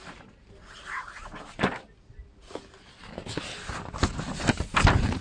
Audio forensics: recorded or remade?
recorded